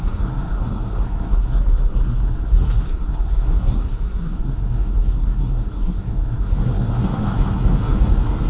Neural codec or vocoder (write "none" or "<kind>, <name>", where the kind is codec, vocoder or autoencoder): codec, SNAC